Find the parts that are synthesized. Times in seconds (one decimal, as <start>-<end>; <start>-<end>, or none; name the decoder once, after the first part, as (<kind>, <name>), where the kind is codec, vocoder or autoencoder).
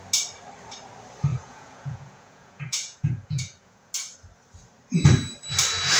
1.3-3.9 (vocoder, Vocos)